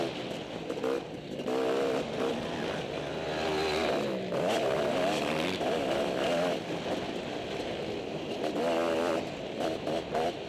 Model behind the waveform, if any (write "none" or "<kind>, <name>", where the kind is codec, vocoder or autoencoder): none